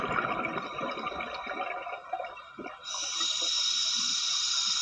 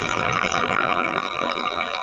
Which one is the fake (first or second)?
second